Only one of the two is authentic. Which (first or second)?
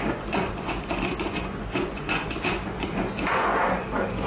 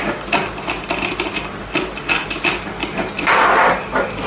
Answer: second